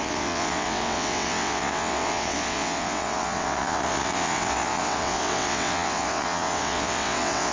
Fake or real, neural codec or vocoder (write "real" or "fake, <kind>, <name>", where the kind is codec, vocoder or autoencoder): fake, vocoder, WaveNeXt